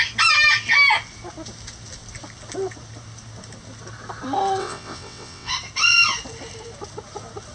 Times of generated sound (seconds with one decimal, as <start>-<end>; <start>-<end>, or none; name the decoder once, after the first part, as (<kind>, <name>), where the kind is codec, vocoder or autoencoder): 4.6-5.5 (vocoder, WaveNeXt)